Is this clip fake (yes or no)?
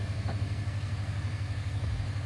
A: yes